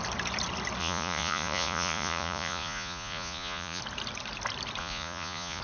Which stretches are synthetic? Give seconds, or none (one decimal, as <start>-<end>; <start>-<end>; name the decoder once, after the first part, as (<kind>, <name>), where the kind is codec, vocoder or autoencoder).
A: 0.8-3.8 (vocoder, Vocos); 4.8-5.6

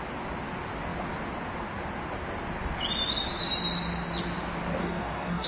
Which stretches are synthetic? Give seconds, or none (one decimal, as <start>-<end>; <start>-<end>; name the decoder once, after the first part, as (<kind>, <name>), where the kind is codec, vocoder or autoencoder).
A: 4.8-5.5 (codec, DAC)

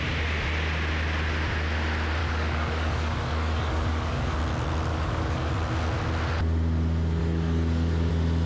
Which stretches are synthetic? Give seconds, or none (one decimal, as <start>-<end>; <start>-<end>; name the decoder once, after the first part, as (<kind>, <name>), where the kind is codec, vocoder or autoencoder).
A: 2.2-4.4 (codec, DAC); 4.9-5.5; 7.2-8.1

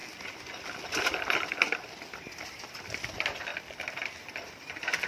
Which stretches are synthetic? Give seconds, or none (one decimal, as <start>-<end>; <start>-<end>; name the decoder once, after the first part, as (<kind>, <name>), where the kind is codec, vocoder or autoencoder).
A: 2.2-3.5 (vocoder, BigVGAN v2); 4.2-5.1

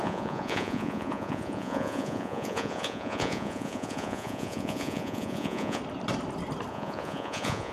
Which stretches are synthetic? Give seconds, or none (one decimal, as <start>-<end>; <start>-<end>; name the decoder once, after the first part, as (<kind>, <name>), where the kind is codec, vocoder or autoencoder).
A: 0.0-5.8 (vocoder, Vocos); 6.7-7.7

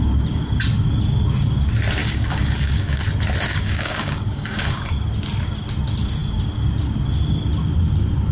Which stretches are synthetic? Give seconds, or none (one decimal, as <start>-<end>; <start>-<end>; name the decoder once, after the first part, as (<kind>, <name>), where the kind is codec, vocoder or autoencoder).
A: 2.0-3.0 (codec, DAC); 3.5-4.9

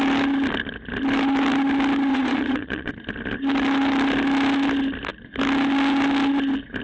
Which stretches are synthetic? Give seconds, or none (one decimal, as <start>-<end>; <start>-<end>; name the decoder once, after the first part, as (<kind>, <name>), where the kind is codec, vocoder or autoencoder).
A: 2.1-2.9 (vocoder, Vocos)